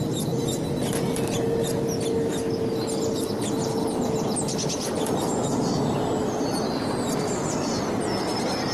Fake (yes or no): no